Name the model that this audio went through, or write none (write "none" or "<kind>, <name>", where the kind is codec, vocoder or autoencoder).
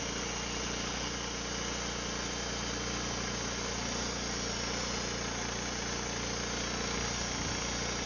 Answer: none